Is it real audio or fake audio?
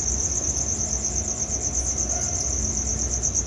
real